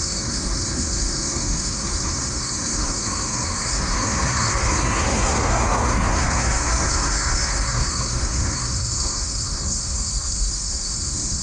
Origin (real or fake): fake